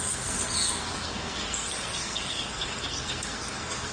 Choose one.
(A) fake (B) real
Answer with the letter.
A